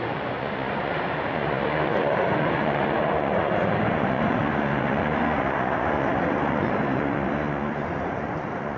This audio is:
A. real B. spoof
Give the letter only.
B